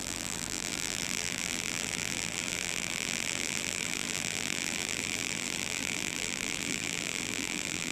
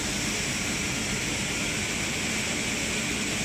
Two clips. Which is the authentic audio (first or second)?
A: second